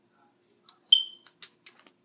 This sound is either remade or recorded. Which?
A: recorded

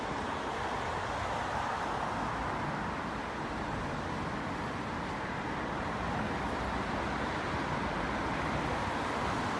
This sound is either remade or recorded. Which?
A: recorded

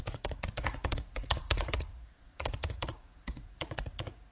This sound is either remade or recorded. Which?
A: remade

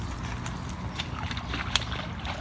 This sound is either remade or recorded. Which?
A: recorded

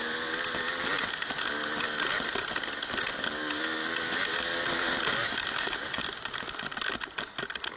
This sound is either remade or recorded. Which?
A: recorded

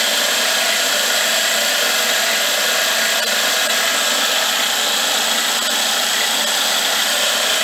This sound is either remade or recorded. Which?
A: recorded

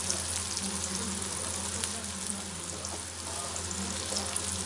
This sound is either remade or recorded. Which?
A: recorded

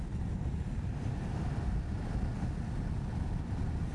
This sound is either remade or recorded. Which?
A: recorded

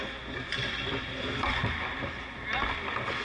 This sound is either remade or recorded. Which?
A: recorded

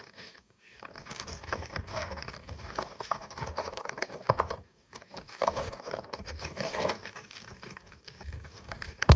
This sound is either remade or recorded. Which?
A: remade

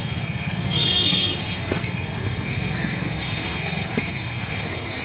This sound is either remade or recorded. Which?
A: remade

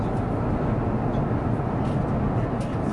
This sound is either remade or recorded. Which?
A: recorded